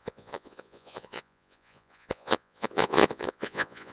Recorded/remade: remade